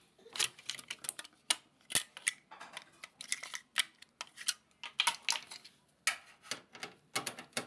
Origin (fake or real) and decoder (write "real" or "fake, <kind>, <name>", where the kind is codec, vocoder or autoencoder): real